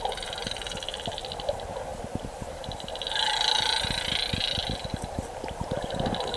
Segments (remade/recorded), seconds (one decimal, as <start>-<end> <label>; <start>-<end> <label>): 0.0-6.4 recorded